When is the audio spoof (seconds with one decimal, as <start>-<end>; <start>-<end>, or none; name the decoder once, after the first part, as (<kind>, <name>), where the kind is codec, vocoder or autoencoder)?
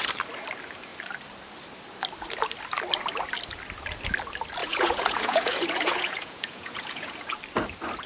4.6-7.1 (vocoder, Vocos)